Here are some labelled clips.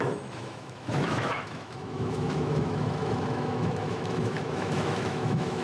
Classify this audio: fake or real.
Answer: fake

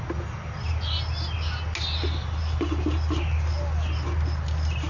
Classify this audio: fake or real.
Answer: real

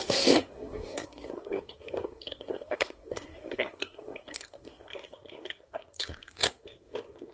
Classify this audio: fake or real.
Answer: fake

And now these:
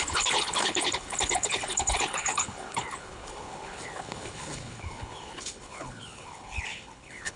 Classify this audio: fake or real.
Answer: fake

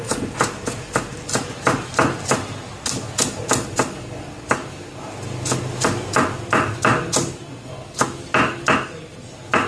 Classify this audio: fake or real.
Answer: real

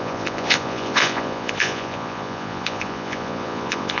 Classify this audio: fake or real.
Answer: fake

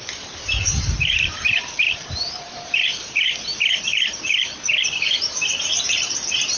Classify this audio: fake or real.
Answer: fake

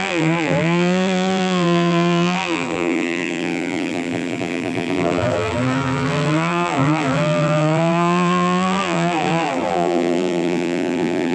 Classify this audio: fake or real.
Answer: fake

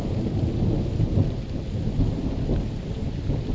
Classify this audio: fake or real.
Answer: real